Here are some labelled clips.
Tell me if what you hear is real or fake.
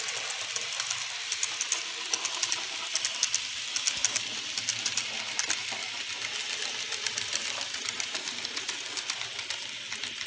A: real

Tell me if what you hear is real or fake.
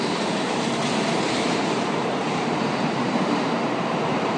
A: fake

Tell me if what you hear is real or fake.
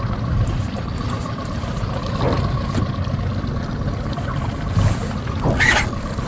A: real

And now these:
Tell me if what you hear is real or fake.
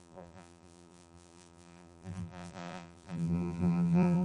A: fake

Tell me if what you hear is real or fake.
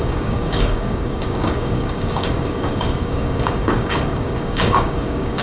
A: fake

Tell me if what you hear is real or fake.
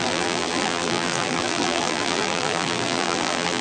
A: fake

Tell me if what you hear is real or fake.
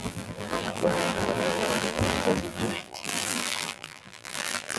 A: fake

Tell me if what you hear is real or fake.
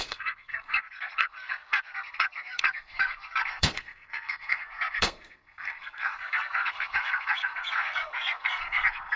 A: fake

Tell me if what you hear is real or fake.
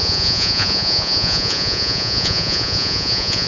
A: fake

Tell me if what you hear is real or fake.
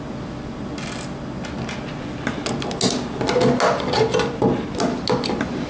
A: real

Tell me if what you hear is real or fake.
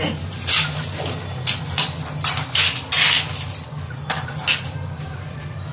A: real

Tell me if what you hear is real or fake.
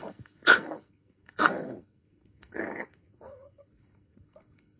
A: fake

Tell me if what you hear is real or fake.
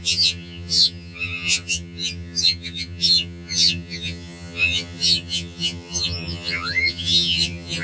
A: fake